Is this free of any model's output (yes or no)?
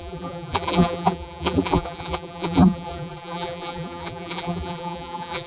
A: no